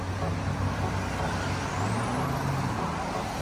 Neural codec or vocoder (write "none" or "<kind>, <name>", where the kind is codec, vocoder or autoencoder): none